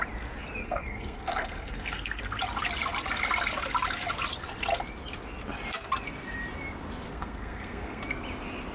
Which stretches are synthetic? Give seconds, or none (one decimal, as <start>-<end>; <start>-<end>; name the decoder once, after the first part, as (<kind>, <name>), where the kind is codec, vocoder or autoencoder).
0.6-2.2 (codec, SNAC); 7.1-8.0